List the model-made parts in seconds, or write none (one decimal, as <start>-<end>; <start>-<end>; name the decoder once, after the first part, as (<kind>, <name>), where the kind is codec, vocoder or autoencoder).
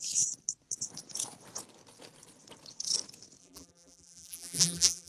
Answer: 3.4-5.1 (vocoder, BigVGAN v2)